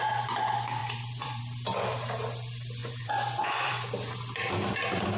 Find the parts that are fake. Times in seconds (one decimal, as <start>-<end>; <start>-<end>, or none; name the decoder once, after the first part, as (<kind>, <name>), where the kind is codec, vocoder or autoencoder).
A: 0.8-1.4 (vocoder, Vocos); 2.8-3.7